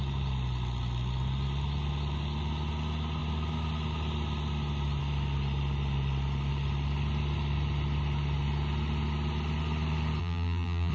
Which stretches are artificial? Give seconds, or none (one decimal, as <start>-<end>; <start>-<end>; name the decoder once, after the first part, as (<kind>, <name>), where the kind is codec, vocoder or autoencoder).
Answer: 10.2-10.9 (vocoder, BigVGAN v2)